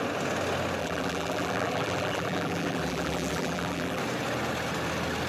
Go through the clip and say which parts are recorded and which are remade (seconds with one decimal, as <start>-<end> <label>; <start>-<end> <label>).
0.0-0.8 recorded; 0.8-4.0 remade; 4.0-5.3 recorded

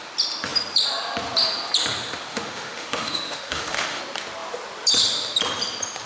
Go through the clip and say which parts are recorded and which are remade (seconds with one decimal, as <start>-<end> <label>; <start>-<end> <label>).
0.0-2.3 recorded; 2.3-4.0 remade; 4.0-6.1 recorded

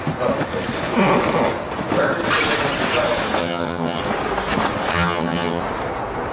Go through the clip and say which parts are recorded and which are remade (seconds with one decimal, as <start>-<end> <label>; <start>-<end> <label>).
0.0-3.4 recorded; 3.4-4.0 remade; 4.0-4.9 recorded; 4.9-5.6 remade; 5.6-6.3 recorded